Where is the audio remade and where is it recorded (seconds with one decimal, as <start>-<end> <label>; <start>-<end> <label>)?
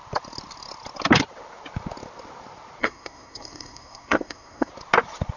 0.0-2.8 recorded; 2.8-4.7 remade; 4.7-5.4 recorded